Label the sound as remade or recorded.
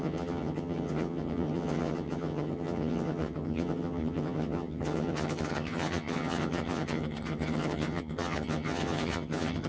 remade